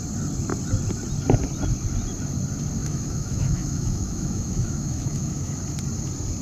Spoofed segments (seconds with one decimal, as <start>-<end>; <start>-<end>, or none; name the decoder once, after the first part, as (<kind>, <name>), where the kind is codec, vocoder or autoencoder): 2.8-5.6 (autoencoder, DAC-VAE)